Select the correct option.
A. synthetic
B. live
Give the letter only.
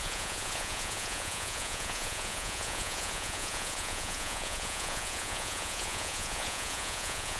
A